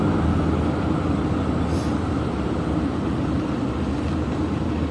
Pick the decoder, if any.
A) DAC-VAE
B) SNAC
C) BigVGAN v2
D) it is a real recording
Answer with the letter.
D